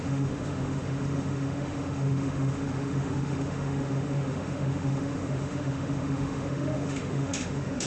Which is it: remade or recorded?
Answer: remade